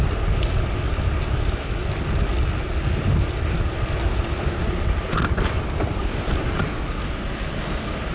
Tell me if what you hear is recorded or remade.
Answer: recorded